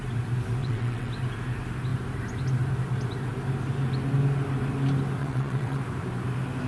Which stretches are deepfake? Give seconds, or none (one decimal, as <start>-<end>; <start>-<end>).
0.6-1.1; 5.2-5.8